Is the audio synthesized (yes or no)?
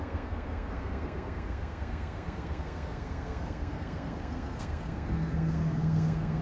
yes